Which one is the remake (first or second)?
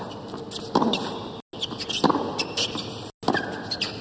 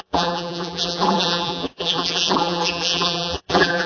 second